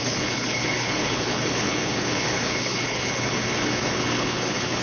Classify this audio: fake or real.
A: fake